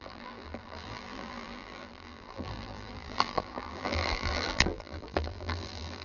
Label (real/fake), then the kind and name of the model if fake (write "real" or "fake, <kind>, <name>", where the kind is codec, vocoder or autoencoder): fake, vocoder, BigVGAN v2